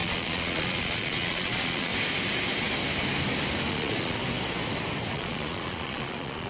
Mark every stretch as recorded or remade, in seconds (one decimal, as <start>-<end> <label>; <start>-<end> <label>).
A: 0.0-1.9 remade; 1.9-3.7 recorded; 3.7-4.2 remade; 4.2-5.1 recorded; 5.1-6.5 remade